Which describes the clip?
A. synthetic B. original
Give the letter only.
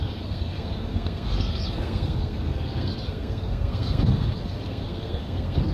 A